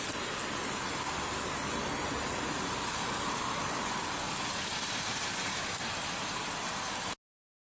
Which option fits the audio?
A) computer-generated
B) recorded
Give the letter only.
B